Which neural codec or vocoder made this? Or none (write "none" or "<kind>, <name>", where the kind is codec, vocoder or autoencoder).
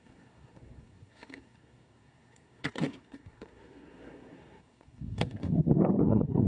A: codec, SNAC